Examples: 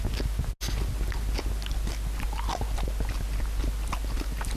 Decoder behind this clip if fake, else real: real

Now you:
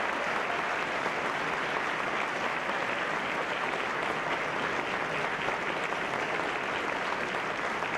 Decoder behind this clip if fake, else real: real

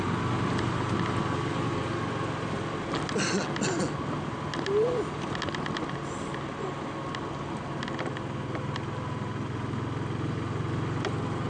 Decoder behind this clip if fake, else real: real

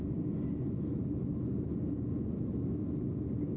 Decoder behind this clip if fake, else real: real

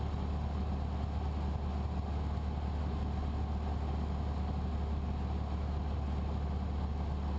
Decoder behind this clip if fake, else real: real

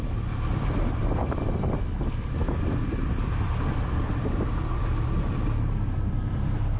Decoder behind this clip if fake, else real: fake, vocoder, BigVGAN v2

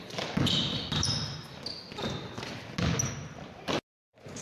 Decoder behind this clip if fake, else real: real